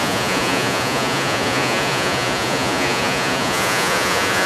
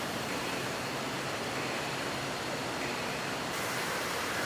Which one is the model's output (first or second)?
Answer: first